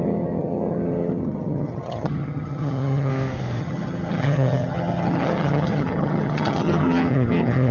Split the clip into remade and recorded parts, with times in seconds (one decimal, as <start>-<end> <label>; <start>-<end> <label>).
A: 0.0-3.1 remade; 3.1-3.6 recorded; 3.6-7.7 remade